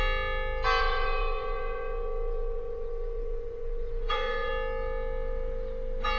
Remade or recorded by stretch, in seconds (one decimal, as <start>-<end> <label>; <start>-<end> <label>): 0.0-0.8 recorded; 0.8-4.5 remade; 4.5-6.2 recorded